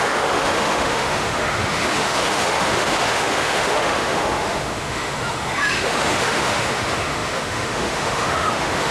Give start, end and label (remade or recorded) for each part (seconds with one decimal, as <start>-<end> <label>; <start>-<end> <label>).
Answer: 0.0-8.9 remade